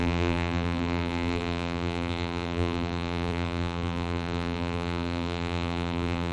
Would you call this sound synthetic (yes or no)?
yes